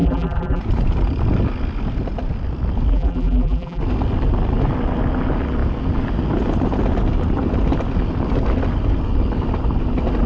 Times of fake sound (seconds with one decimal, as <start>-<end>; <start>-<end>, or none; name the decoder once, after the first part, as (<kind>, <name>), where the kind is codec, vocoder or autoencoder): 0.0-0.6 (vocoder, BigVGAN v2); 2.9-3.8